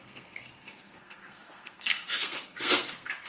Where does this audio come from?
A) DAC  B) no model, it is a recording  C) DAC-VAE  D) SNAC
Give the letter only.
D